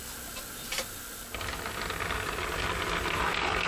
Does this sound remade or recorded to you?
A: recorded